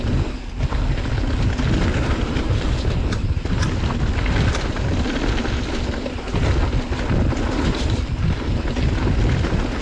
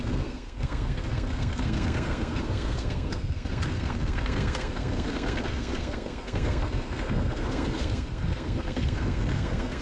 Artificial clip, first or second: second